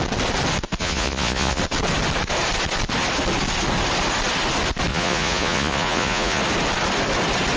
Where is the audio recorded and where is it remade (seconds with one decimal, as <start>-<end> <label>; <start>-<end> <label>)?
0.0-0.8 recorded; 0.8-1.6 remade; 1.6-4.9 recorded; 4.9-6.4 remade; 6.4-7.6 recorded